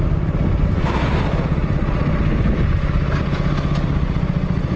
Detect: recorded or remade recorded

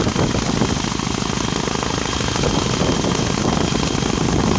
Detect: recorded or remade recorded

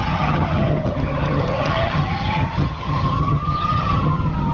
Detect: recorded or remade remade